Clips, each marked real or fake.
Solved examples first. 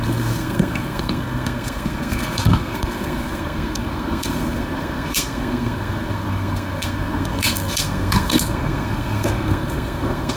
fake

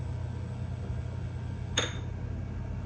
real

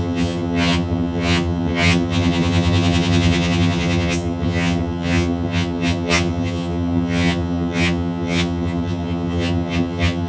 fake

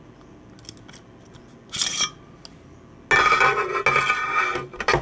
real